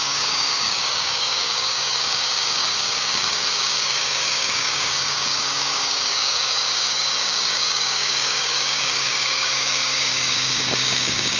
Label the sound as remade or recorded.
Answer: remade